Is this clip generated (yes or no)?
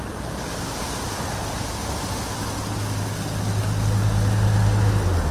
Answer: no